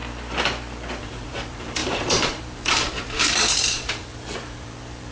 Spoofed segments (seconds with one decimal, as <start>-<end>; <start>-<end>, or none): 1.0-5.1